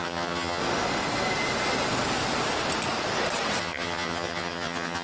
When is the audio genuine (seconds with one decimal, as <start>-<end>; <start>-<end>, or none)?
0.6-3.6